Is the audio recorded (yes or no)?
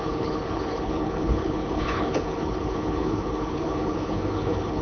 no